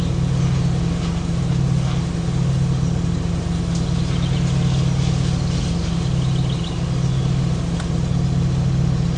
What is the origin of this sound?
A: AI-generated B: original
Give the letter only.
B